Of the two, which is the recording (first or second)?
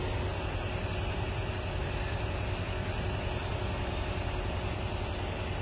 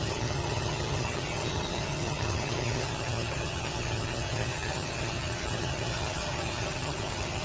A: first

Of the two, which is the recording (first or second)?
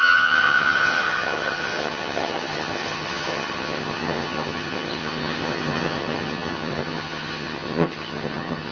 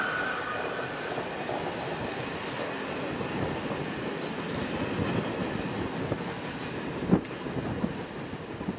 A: second